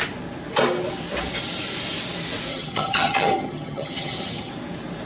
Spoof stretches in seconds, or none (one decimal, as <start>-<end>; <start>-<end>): 2.5-4.5